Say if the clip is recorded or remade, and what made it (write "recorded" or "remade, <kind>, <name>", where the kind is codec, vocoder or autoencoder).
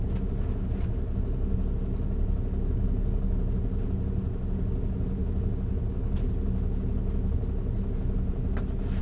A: recorded